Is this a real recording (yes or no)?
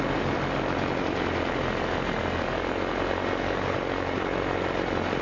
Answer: yes